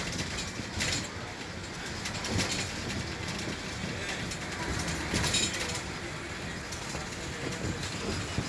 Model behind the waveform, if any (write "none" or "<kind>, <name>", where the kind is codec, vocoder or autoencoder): none